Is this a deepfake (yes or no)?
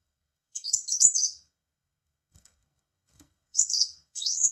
yes